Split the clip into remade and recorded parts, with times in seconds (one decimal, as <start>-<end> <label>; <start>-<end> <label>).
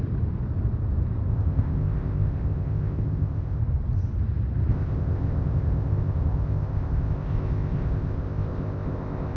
0.0-1.3 recorded; 1.3-3.6 remade; 3.6-4.7 recorded; 4.7-9.4 remade